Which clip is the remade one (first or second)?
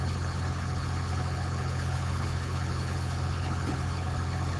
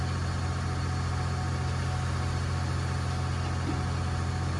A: first